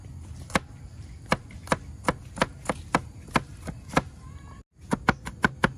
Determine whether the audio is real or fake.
real